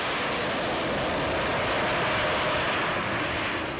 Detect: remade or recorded recorded